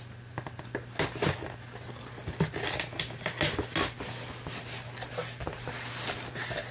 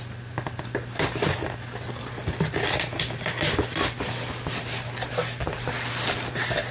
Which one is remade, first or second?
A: second